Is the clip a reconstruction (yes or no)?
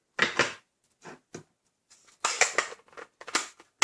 no